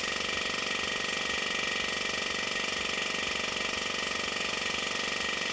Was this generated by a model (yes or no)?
no